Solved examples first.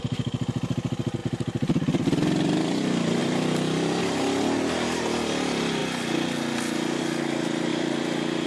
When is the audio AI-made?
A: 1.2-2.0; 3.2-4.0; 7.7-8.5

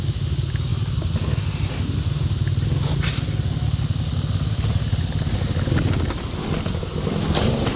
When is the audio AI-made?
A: none

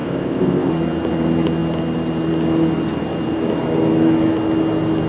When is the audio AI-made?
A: 0.0-0.7